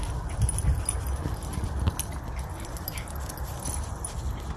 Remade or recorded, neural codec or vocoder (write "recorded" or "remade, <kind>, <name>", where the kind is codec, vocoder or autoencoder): recorded